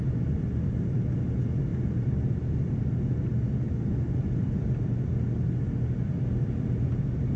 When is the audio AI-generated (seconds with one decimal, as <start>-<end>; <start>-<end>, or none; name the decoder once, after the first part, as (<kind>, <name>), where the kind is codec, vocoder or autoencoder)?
1.7-2.3 (vocoder, BigVGAN v2)